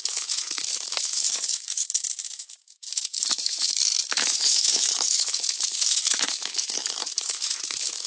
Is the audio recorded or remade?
remade